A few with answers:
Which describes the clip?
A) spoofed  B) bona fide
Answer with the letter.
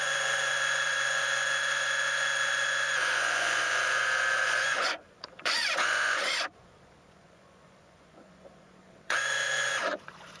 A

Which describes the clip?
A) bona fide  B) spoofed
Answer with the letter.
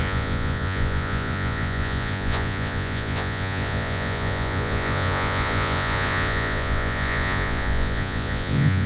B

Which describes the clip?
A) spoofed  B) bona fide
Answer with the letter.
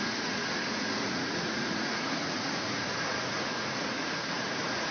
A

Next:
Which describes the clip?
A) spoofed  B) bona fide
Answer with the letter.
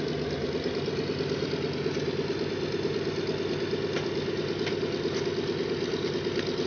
B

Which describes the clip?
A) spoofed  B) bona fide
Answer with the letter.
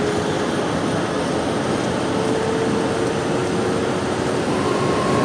B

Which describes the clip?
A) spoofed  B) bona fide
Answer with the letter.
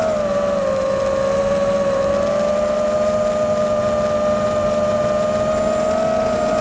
B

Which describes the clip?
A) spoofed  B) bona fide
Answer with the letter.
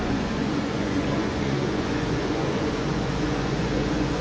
A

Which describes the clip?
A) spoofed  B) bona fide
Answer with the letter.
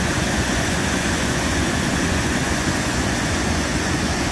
A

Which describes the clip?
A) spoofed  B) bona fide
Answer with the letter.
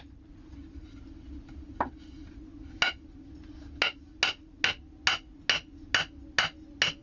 B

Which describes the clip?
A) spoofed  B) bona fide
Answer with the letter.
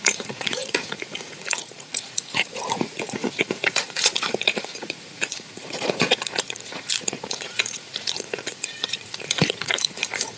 A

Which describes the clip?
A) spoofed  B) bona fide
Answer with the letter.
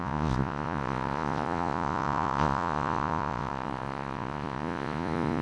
A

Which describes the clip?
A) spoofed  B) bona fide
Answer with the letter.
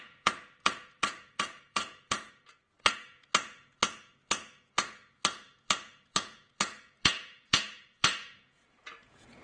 A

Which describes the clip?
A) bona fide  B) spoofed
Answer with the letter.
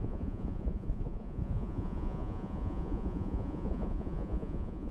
B